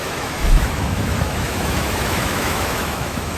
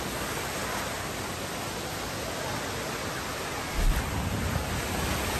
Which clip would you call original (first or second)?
second